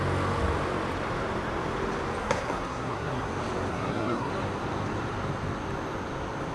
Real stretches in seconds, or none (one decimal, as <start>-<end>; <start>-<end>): 0.0-2.2; 3.3-3.7; 4.3-6.5